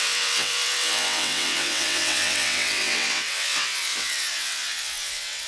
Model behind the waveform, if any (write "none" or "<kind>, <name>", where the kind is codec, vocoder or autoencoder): vocoder, WaveNeXt